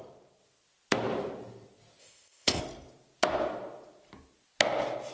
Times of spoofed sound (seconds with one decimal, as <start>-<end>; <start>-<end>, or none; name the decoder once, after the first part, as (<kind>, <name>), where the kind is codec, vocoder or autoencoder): 2.0-2.6 (codec, ZipCodec)